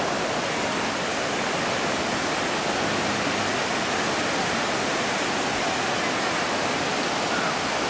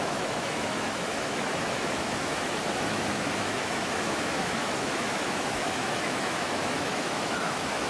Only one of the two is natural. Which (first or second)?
first